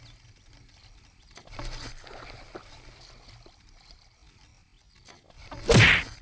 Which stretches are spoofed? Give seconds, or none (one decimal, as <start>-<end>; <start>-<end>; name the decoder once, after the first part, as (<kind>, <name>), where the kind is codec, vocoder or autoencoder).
none